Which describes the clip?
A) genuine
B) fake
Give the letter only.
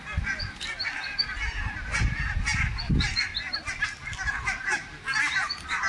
A